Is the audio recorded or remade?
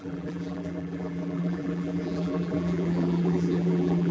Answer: remade